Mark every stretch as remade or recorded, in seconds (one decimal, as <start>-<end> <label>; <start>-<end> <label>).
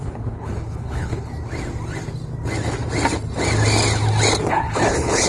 0.0-1.3 remade; 1.3-4.5 recorded; 4.5-5.3 remade